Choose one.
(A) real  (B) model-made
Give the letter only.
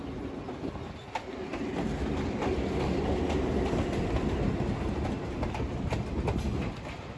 A